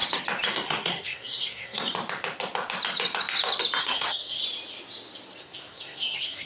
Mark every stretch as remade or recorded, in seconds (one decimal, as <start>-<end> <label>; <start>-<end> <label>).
0.0-0.5 recorded; 0.5-1.9 remade; 1.9-3.8 recorded; 3.8-4.4 remade; 4.4-5.4 recorded; 5.4-6.5 remade